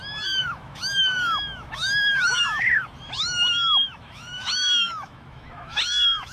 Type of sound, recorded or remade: remade